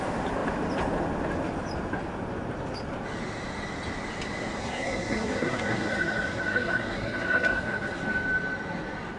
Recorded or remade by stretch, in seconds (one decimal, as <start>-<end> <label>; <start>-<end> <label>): 0.0-4.6 recorded; 4.6-8.0 remade; 8.0-9.2 recorded